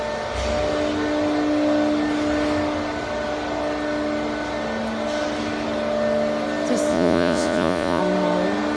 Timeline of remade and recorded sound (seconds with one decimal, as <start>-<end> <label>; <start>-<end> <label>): 0.0-6.9 recorded; 6.9-8.0 remade; 8.0-8.8 recorded